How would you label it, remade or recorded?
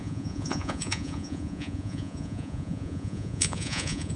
remade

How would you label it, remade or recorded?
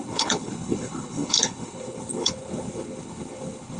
remade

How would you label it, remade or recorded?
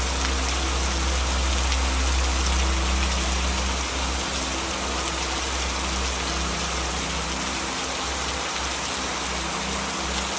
recorded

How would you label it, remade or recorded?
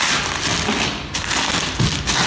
recorded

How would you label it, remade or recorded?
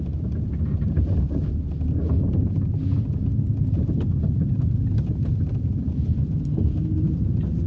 remade